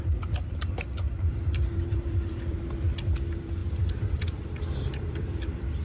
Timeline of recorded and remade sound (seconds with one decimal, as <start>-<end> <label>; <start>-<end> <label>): 0.0-5.8 remade

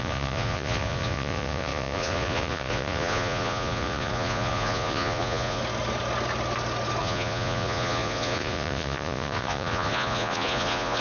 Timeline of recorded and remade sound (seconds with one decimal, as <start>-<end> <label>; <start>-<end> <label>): 0.0-5.6 remade; 5.6-7.0 recorded; 7.0-11.0 remade

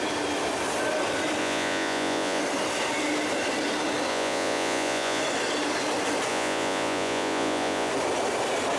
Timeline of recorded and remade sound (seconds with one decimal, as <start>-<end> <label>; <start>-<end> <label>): 0.0-1.4 recorded; 1.4-2.4 remade; 2.4-4.1 recorded; 4.1-5.2 remade; 5.2-6.3 recorded; 6.3-7.9 remade; 7.9-8.8 recorded

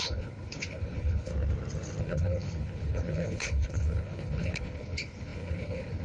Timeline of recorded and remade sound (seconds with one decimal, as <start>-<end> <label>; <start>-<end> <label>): 0.0-1.3 remade; 1.3-2.0 recorded; 2.0-6.0 remade